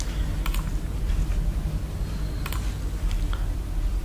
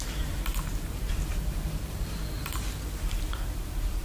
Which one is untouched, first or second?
first